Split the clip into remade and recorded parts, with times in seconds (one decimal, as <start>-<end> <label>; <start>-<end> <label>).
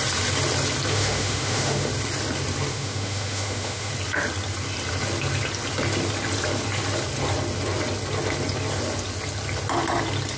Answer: 0.0-0.9 recorded; 0.9-1.9 remade; 1.9-2.7 recorded; 2.7-3.9 remade; 3.9-10.4 recorded